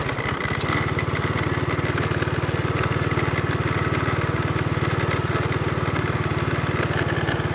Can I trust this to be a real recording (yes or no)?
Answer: yes